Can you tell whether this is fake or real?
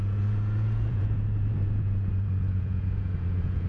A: fake